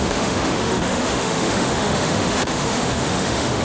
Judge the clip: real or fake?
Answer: fake